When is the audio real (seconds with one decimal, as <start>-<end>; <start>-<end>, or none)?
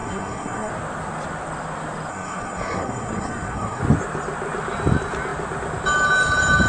0.7-2.1; 3.8-6.7